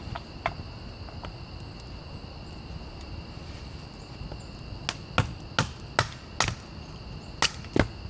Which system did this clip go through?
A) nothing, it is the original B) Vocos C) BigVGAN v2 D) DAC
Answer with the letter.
A